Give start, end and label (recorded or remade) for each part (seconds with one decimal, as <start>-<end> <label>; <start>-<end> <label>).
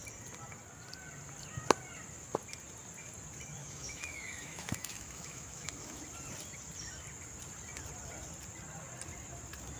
0.0-3.6 recorded; 3.6-6.0 remade; 6.0-9.8 recorded